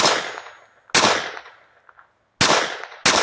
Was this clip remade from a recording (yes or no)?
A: no